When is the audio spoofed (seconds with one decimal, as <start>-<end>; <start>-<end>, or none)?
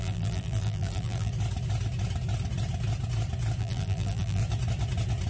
0.0-1.3; 3.6-4.4